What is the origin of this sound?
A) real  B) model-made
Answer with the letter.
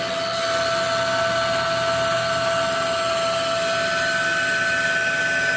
A